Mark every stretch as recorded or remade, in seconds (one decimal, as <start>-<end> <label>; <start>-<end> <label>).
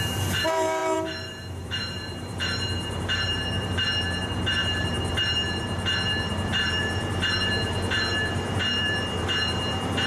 0.0-10.1 remade